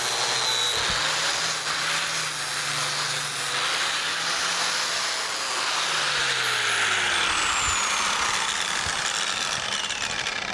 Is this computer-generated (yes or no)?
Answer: no